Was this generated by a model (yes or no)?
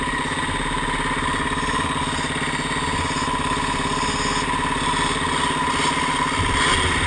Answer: no